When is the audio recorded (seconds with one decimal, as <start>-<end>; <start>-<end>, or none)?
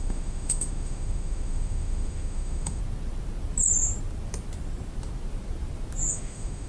2.8-6.1